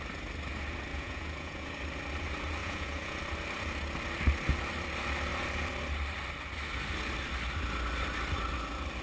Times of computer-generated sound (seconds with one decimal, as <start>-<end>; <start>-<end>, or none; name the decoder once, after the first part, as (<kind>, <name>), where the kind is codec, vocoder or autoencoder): 0.9-1.7 (vocoder, Vocos); 2.6-3.2